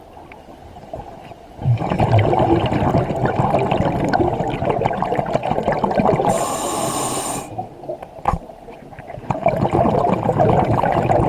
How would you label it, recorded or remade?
recorded